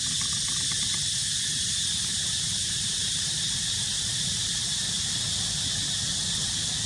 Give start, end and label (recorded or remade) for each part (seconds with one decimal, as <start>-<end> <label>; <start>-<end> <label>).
0.0-2.1 recorded; 2.1-5.2 remade; 5.2-6.9 recorded